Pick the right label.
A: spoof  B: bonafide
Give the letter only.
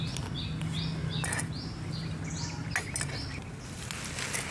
B